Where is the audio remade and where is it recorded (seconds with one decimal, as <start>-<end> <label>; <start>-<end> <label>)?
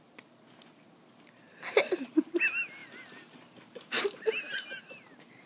0.0-5.5 recorded